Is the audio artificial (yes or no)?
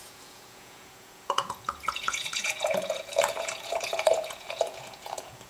yes